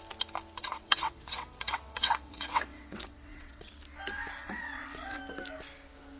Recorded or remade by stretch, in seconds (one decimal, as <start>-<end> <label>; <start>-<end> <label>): 0.0-0.6 recorded; 0.6-3.7 remade; 3.7-4.4 recorded; 4.4-5.2 remade; 5.2-6.2 recorded